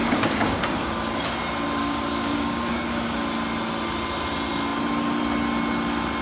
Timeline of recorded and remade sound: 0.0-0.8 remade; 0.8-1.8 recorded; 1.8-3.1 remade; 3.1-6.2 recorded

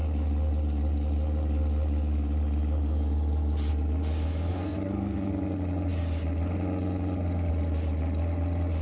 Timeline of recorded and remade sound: 0.0-4.5 recorded; 4.5-5.3 remade; 5.3-8.8 recorded

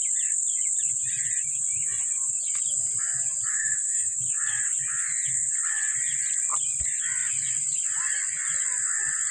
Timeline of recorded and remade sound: 0.0-3.5 recorded; 3.5-4.2 remade; 4.2-9.3 recorded

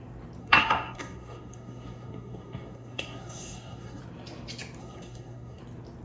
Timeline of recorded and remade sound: 0.0-0.4 recorded; 0.4-4.0 remade; 4.0-4.8 recorded; 4.8-5.6 remade; 5.6-6.0 recorded

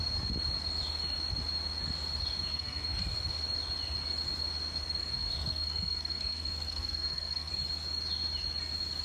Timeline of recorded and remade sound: 0.0-2.5 recorded; 2.5-3.0 remade; 3.0-5.0 recorded; 5.0-7.5 remade; 7.5-9.0 recorded